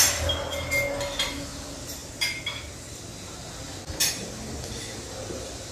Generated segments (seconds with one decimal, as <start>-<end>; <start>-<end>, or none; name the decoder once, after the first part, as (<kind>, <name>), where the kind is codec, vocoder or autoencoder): none